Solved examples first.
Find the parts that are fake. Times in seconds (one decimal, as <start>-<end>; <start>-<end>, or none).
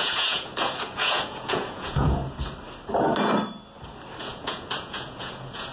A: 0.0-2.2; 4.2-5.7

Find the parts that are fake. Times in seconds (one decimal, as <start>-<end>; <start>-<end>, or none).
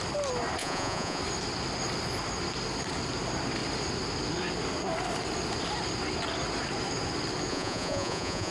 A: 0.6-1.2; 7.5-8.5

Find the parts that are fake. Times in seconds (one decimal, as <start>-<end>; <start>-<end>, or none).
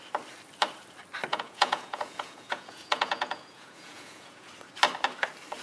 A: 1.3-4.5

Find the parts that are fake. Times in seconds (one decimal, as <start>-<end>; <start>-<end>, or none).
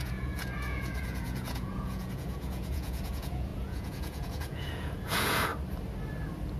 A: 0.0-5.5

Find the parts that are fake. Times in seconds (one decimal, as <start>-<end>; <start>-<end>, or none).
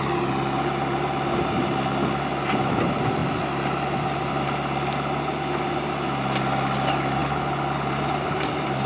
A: none